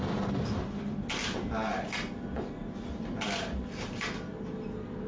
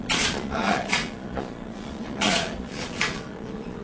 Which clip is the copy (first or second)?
second